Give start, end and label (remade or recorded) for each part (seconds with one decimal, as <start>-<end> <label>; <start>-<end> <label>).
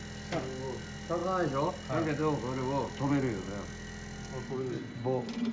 0.0-5.5 recorded